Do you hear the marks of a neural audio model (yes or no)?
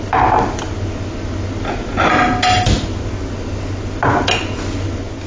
no